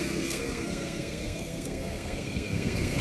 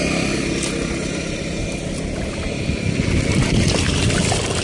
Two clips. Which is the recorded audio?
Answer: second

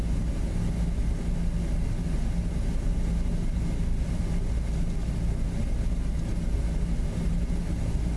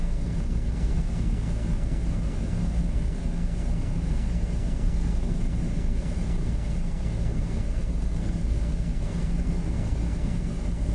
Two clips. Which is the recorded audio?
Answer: first